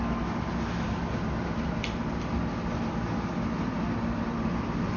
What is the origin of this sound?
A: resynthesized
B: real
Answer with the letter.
B